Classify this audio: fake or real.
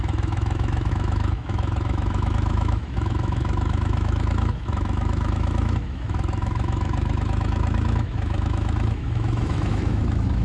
fake